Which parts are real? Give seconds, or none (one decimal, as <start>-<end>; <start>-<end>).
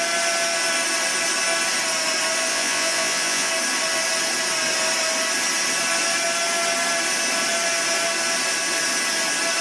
0.0-2.5; 3.5-9.6